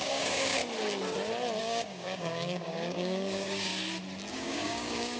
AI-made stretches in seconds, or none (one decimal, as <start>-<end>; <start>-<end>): 0.0-0.6; 1.6-3.7; 4.3-5.2